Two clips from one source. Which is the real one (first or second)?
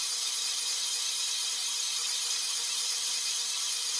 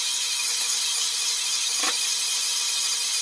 second